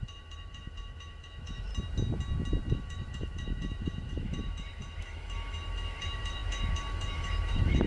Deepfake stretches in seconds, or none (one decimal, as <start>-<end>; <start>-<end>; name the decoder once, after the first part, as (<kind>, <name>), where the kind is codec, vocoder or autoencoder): 0.0-1.7 (autoencoder, DAC-VAE); 2.7-7.9